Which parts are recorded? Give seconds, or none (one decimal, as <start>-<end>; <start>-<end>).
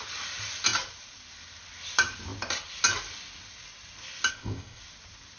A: 0.0-4.3; 4.8-5.4